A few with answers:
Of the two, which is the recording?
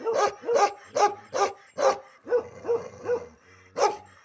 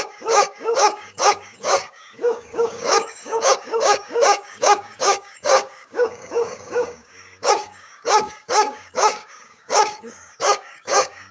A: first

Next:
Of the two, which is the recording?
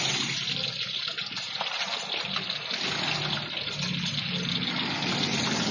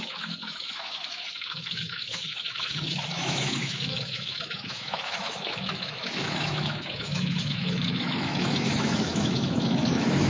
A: first